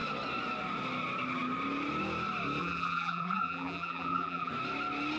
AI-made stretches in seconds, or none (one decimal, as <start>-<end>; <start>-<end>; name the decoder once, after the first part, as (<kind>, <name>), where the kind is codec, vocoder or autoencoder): 2.6-4.5 (vocoder, BigVGAN v2)